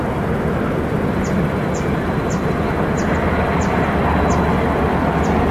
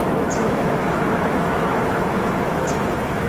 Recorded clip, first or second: first